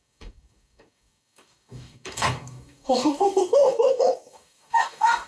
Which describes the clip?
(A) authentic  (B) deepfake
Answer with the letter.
B